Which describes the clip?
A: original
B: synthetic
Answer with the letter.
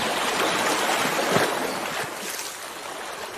A